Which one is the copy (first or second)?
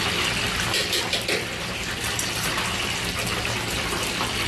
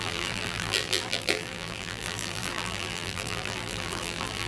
second